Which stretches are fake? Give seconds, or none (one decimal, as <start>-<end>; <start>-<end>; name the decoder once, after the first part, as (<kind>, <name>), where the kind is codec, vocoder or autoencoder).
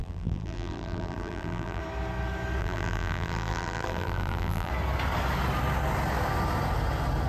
0.0-1.8 (vocoder, BigVGAN v2); 2.6-4.7